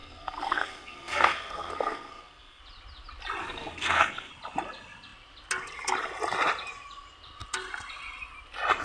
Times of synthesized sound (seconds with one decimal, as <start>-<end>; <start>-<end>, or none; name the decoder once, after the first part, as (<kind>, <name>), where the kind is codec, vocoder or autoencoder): 0.0-2.6 (codec, SNAC); 3.4-4.3